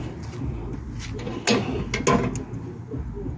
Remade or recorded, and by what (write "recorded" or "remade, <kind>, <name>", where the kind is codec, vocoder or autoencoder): recorded